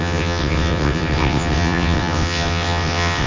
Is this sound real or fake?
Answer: fake